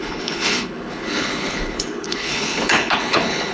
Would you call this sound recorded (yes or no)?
no